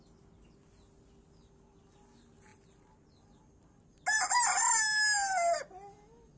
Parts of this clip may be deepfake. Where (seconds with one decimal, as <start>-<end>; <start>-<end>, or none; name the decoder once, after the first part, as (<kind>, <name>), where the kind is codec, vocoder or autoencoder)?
none